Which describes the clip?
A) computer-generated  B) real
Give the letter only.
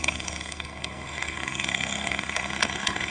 A